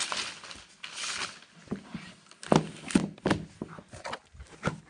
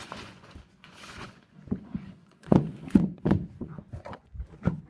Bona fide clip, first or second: first